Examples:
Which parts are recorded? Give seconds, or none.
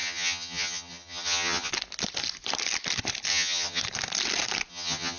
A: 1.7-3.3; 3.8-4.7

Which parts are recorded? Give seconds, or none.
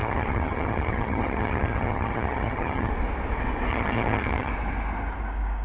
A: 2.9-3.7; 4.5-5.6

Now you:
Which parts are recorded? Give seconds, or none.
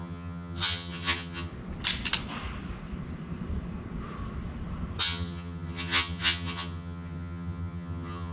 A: 1.5-5.0